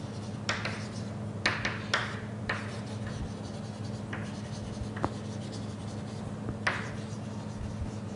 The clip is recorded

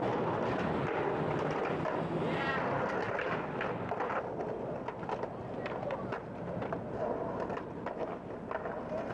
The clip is recorded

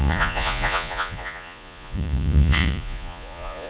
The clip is remade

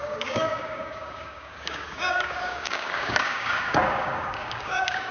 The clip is remade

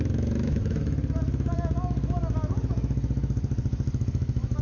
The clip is remade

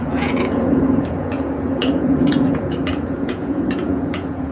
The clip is remade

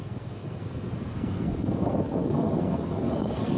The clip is remade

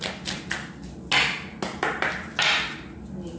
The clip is recorded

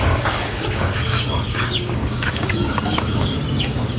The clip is remade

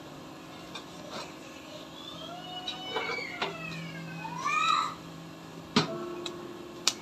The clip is recorded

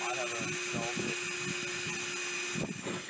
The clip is recorded